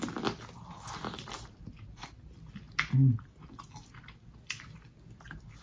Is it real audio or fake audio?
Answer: real